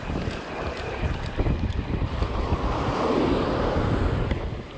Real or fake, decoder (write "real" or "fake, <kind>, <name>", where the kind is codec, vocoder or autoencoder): real